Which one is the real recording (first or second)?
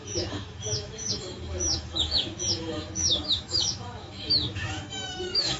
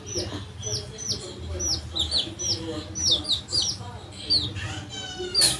second